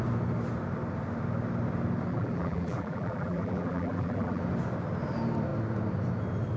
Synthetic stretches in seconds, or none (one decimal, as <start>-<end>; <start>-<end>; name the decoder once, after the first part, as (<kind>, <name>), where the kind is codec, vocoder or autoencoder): 2.1-4.4 (vocoder, BigVGAN v2)